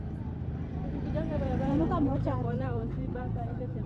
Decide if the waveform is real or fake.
fake